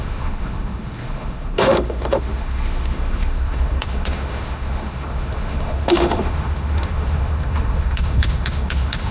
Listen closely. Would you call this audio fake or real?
fake